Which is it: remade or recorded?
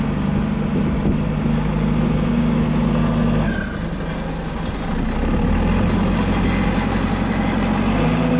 recorded